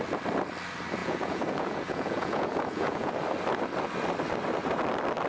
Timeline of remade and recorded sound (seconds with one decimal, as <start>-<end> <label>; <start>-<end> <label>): 0.0-1.0 recorded; 1.0-3.1 remade; 3.1-5.3 recorded